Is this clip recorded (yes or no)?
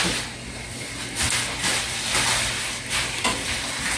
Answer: yes